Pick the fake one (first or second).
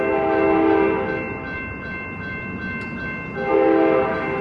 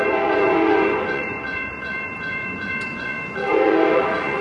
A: second